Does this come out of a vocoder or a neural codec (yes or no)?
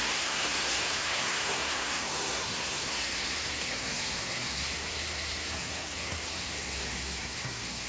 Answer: yes